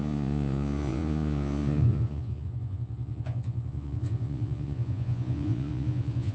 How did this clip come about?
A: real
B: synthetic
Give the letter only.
B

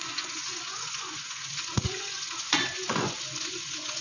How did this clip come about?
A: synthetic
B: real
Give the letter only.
A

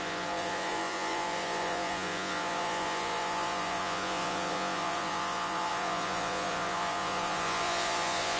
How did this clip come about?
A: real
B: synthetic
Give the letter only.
B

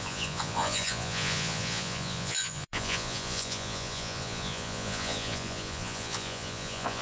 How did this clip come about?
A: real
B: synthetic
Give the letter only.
B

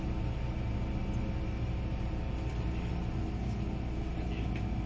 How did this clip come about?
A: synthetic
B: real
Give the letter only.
B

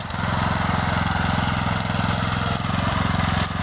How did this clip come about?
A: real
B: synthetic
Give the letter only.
A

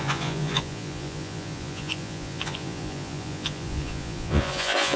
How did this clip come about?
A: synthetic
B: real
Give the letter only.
A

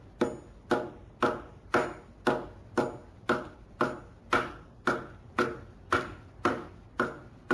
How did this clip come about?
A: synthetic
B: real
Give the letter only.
B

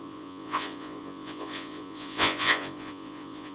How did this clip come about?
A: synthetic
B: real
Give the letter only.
A